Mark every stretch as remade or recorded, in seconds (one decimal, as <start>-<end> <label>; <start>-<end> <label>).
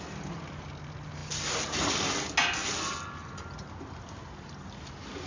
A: 0.0-5.3 recorded